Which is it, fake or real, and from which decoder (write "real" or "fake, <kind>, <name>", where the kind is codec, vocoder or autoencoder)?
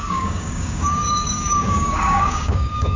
fake, codec, DAC